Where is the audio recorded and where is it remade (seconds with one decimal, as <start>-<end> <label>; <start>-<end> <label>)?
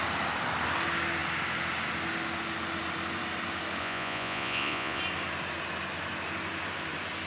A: 0.0-3.8 recorded; 3.8-5.0 remade; 5.0-7.3 recorded